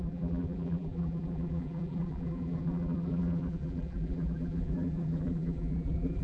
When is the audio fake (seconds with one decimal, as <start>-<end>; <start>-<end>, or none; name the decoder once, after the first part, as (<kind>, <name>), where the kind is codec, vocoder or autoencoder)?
0.0-6.2 (vocoder, BigVGAN v2)